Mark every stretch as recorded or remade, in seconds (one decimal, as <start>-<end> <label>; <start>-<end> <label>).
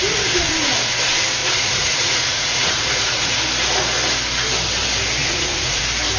0.0-1.4 recorded; 1.4-3.4 remade; 3.4-5.2 recorded; 5.2-5.8 remade; 5.8-6.2 recorded